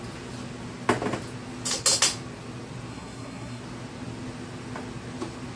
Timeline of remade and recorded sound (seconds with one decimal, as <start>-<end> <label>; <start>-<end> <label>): 0.0-2.9 recorded; 2.9-3.6 remade; 3.6-5.6 recorded